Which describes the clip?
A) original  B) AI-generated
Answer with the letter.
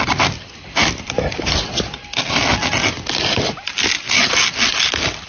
A